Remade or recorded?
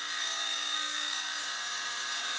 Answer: remade